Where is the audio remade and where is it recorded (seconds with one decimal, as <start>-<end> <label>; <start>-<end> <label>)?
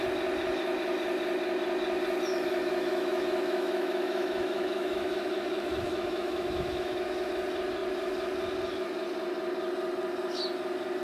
0.0-2.3 recorded; 2.3-7.3 remade; 7.3-11.0 recorded